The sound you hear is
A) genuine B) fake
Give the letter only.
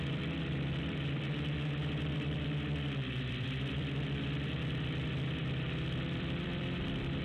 B